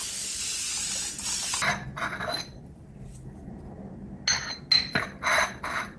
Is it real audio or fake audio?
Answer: real